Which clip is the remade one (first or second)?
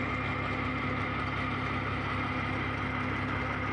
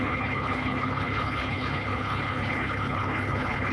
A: second